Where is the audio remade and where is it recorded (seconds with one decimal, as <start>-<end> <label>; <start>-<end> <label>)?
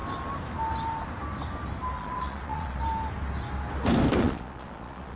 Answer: 0.0-1.9 recorded; 1.9-2.8 remade; 2.8-4.2 recorded; 4.2-5.2 remade